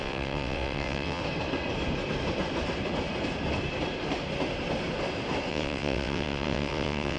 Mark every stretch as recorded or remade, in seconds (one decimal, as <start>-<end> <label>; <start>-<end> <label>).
0.0-1.2 remade; 1.2-5.5 recorded; 5.5-7.2 remade

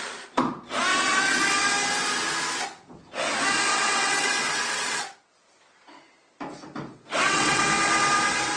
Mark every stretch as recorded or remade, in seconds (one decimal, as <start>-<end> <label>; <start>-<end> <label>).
0.0-0.9 recorded; 0.9-1.4 remade; 1.4-3.7 recorded; 3.7-5.0 remade; 5.0-6.9 recorded; 6.9-7.6 remade; 7.6-8.6 recorded

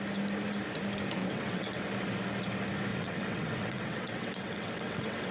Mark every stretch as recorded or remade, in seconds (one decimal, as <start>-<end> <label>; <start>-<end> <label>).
0.0-1.2 recorded; 1.2-1.8 remade; 1.8-2.9 recorded; 2.9-5.3 remade

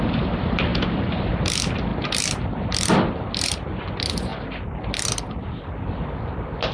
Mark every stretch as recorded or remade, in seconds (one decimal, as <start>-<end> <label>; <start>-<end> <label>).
0.0-6.7 recorded

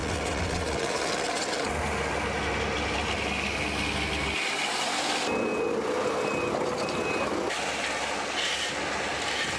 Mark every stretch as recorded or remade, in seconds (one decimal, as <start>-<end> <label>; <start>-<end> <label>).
0.0-1.7 remade; 1.7-9.6 recorded

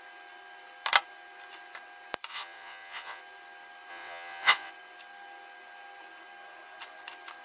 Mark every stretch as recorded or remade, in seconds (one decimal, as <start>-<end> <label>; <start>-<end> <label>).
0.0-2.3 recorded; 2.3-3.2 remade; 3.2-3.9 recorded; 3.9-4.7 remade; 4.7-7.4 recorded